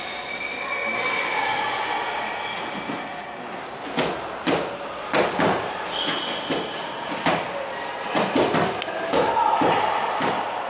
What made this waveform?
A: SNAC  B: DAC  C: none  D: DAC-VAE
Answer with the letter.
C